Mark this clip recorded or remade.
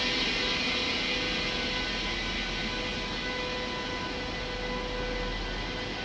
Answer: recorded